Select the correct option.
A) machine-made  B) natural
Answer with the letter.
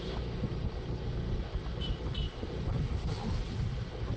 B